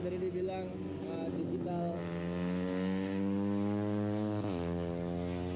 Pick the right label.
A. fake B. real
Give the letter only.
B